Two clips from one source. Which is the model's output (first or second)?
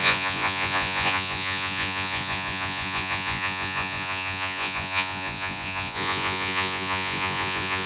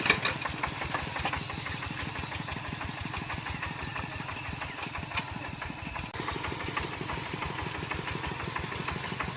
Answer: first